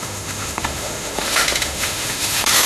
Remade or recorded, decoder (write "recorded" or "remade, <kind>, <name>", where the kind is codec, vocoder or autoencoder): remade, autoencoder, DAC-VAE